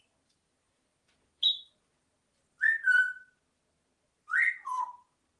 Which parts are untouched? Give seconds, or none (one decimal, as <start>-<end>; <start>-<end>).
0.9-4.1